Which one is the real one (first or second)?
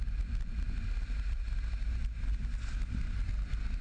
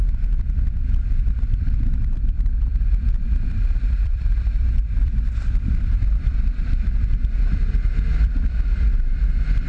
first